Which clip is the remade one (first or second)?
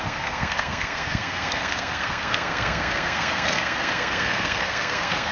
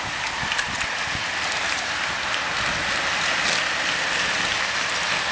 first